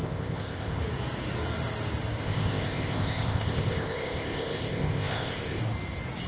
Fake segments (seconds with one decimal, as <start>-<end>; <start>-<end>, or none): 0.0-0.8; 2.2-5.6